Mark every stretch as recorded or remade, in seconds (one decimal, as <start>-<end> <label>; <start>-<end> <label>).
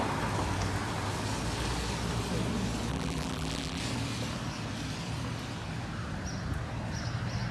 0.0-2.9 recorded; 2.9-3.8 remade; 3.8-7.5 recorded